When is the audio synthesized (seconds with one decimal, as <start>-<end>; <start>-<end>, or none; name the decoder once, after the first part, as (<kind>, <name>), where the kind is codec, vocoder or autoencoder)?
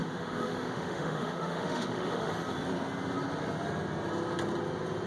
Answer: 0.0-2.3 (autoencoder, DAC-VAE)